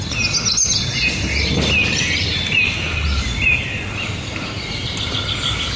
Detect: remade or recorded recorded